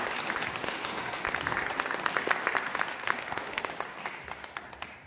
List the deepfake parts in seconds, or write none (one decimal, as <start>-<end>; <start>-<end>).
0.6-1.2; 2.9-3.7